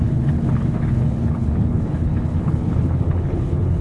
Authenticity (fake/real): fake